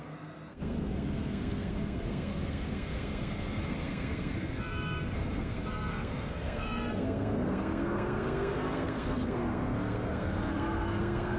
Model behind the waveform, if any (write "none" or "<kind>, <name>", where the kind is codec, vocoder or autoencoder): codec, SNAC